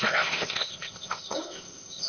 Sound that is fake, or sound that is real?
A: fake